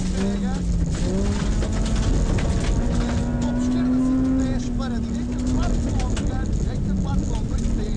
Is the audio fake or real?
real